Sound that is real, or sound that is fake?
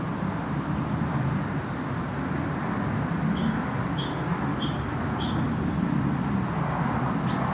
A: real